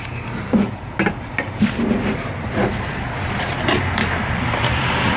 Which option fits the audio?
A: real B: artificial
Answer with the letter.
A